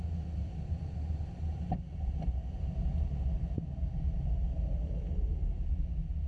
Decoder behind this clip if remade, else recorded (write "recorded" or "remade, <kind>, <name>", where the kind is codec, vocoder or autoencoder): recorded